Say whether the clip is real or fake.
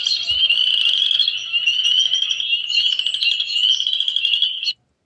real